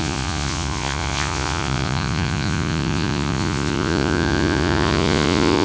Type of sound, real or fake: fake